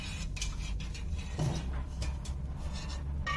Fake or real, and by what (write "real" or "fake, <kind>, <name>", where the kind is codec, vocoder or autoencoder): real